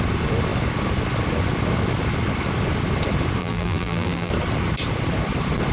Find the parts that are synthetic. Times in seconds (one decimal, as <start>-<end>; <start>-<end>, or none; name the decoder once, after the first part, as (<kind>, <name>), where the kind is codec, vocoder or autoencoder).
3.4-4.3 (vocoder, BigVGAN v2)